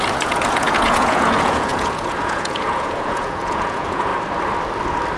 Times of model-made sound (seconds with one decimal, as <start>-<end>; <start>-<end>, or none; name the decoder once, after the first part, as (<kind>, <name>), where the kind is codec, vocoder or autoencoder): 0.0-4.1 (vocoder, Vocos)